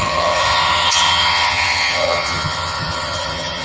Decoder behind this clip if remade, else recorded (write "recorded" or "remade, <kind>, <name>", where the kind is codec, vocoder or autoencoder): remade, vocoder, HiFi-GAN